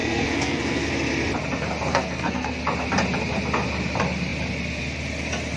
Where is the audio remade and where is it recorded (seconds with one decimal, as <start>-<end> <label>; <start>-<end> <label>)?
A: 0.0-0.9 remade; 0.9-1.9 recorded; 1.9-2.6 remade; 2.6-5.6 recorded